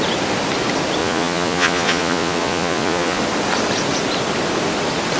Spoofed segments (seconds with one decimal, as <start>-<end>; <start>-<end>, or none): 1.0-3.2

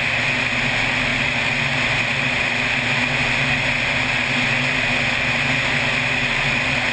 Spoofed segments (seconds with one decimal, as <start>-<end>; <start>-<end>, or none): none

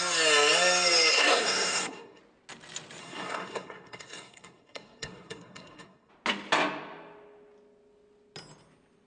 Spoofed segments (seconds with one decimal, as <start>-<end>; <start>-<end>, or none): 1.1-2.2; 3.0-6.1

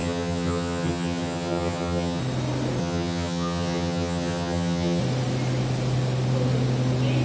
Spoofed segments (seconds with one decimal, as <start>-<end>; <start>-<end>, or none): 0.0-2.2; 2.8-5.0

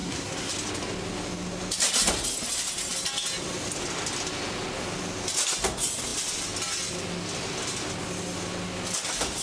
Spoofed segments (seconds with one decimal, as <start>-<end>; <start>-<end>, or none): 0.0-0.5

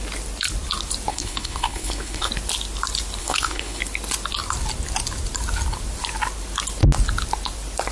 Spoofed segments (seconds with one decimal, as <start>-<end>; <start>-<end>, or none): 1.1-2.3; 3.2-3.8